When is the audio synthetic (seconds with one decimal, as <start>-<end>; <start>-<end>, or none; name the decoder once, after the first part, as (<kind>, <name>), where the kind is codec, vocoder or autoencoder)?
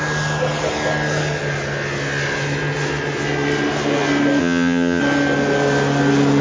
4.4-5.0 (vocoder, HiFi-GAN)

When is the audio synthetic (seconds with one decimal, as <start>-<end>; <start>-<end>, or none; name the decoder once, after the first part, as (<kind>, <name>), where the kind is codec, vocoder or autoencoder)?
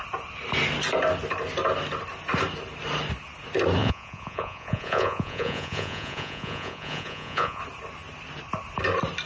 3.8-7.6 (vocoder, Vocos)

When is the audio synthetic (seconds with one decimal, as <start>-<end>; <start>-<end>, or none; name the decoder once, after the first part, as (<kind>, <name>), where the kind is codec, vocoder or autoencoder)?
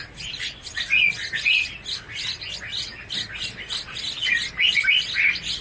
none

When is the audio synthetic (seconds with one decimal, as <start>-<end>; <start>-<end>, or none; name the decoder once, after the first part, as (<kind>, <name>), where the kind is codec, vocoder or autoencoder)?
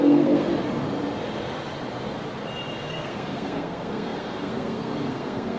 0.0-0.5 (codec, SNAC); 2.9-5.6